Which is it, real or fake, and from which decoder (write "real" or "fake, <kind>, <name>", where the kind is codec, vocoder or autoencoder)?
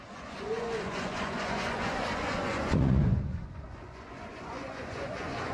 fake, vocoder, Vocos